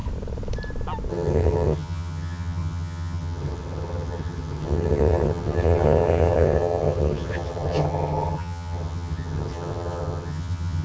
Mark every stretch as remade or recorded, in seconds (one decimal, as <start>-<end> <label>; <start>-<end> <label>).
0.0-1.1 recorded; 1.1-10.8 remade